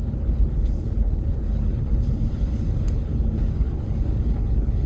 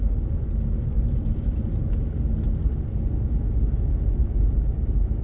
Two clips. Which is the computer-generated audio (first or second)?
first